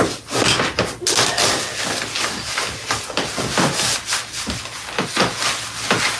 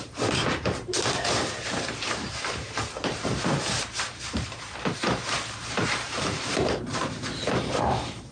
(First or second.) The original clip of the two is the first